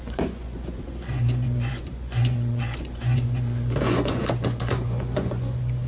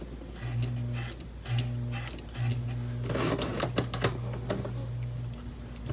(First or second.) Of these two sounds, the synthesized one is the first